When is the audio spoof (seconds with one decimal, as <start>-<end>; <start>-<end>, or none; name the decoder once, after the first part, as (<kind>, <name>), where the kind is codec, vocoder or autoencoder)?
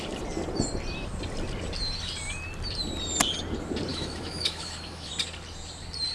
3.9-5.1 (autoencoder, DAC-VAE)